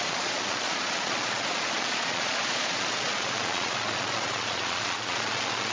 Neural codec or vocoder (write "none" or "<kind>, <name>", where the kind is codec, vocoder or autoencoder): vocoder, Vocos